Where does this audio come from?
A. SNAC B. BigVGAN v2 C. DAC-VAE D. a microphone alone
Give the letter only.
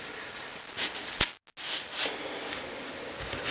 D